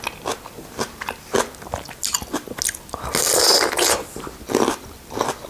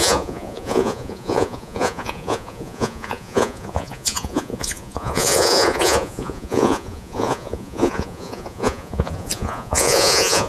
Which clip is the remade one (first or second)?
second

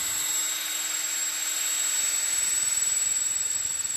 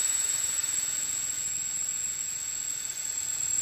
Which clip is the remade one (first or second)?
second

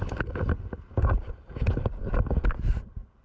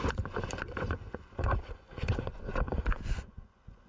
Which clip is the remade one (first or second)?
second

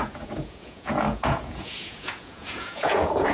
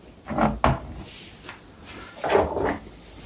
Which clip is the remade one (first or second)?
first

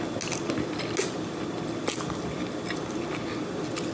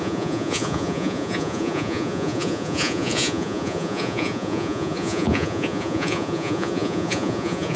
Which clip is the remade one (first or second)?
second